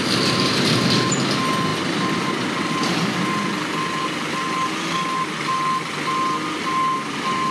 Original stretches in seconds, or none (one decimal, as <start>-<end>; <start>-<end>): 0.0-7.5